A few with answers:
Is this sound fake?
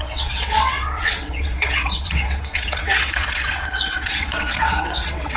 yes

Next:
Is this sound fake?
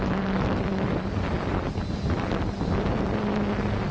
no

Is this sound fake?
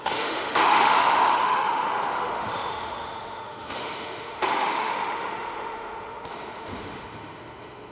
yes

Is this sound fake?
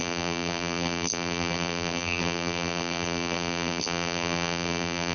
yes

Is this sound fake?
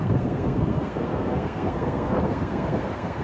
yes